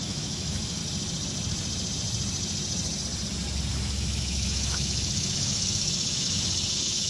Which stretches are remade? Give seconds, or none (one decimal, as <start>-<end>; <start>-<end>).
0.0-0.8; 3.7-7.1